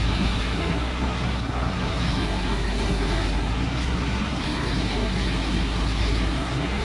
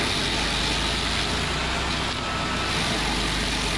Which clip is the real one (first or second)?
second